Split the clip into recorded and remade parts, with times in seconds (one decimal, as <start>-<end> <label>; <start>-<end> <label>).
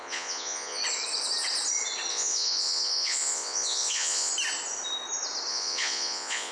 0.0-0.8 remade; 0.8-2.1 recorded; 2.1-4.3 remade; 4.3-5.5 recorded; 5.5-6.5 remade